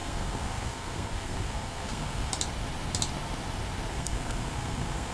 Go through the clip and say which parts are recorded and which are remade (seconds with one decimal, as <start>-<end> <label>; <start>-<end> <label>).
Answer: 0.0-2.3 remade; 2.3-3.9 recorded; 3.9-5.1 remade